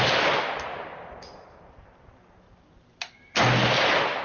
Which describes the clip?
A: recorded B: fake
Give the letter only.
A